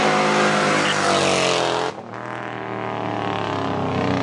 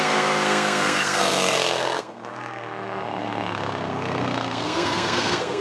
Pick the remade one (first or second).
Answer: second